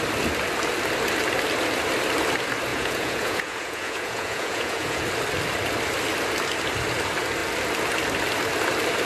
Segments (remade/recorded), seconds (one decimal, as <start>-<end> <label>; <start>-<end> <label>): 0.0-2.7 recorded; 2.7-5.0 remade; 5.0-9.1 recorded